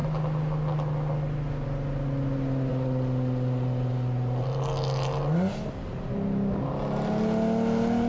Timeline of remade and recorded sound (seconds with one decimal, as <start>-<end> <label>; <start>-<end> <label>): 0.0-8.1 recorded